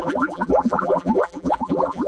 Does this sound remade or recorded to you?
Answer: remade